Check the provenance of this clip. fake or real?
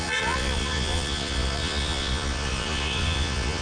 fake